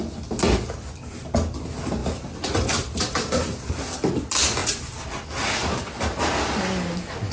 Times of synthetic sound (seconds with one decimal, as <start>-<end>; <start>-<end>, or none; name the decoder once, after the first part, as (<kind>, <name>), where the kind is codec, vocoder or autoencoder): none